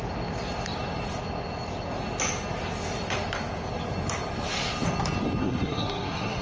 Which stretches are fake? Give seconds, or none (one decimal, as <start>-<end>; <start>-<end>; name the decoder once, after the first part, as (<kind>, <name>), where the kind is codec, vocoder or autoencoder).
5.4-6.4 (codec, SNAC)